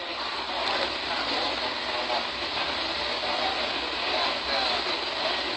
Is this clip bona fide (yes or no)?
yes